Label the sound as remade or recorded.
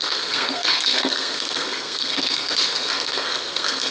remade